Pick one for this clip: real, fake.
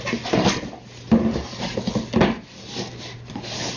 real